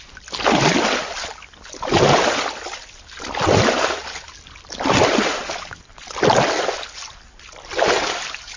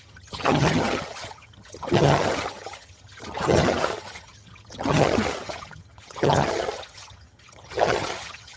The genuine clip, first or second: first